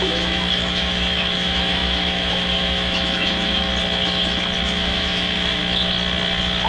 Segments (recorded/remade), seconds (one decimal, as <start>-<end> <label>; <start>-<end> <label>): 0.0-3.7 remade; 3.7-4.6 recorded; 4.6-5.6 remade; 5.6-6.7 recorded

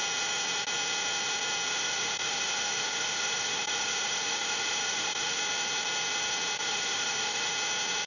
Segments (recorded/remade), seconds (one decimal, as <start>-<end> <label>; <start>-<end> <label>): 0.0-1.7 recorded; 1.7-5.4 remade; 5.4-6.6 recorded; 6.6-7.5 remade; 7.5-8.1 recorded

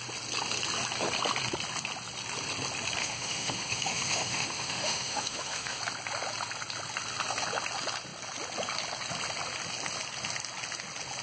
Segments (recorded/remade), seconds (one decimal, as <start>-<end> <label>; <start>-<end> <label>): 0.0-3.0 recorded; 3.0-5.8 remade; 5.8-11.2 recorded

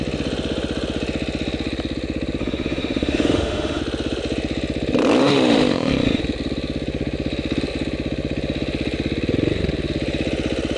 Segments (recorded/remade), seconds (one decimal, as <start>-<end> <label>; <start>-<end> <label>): 0.0-2.4 recorded; 2.4-3.8 remade; 3.8-5.2 recorded; 5.2-6.2 remade; 6.2-10.8 recorded